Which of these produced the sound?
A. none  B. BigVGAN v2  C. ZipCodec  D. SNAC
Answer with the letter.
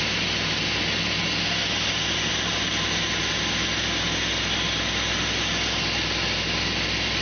A